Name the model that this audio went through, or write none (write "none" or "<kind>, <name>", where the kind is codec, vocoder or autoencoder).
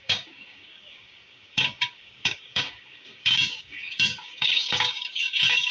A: codec, DAC